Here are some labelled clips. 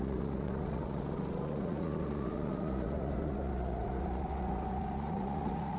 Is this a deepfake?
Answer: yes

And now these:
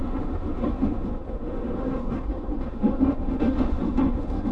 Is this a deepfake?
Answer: yes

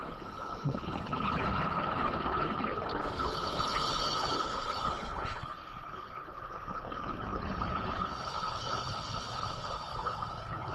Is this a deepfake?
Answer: yes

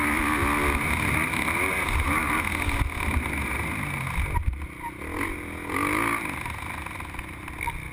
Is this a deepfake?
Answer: no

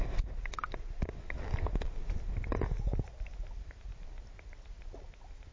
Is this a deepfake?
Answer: no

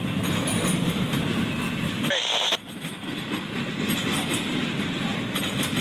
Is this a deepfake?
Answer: no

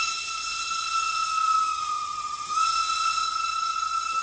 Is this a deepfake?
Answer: yes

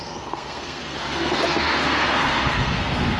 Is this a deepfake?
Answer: yes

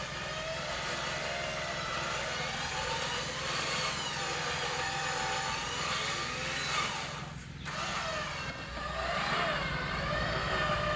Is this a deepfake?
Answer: no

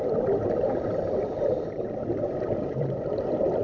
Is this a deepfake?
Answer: yes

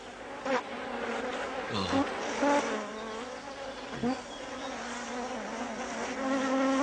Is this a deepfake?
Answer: no